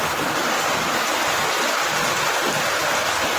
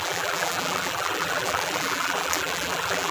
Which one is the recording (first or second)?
first